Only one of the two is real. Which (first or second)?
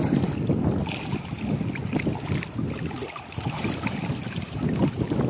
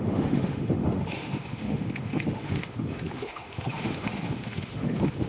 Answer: first